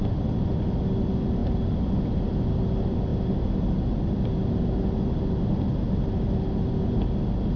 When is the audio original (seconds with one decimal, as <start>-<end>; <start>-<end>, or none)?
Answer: 0.0-7.6